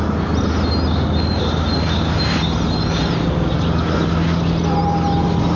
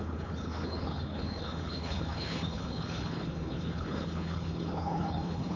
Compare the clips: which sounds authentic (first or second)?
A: first